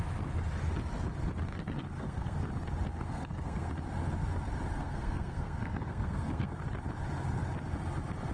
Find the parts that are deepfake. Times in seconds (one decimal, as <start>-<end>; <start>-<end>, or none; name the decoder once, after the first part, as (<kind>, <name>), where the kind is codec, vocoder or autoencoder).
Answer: 1.5-2.5 (codec, SNAC); 2.9-3.7; 4.8-6.6